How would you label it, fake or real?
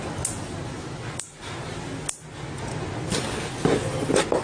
real